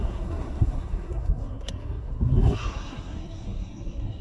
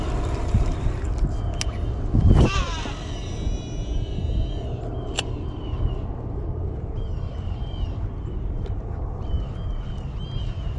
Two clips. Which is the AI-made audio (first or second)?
first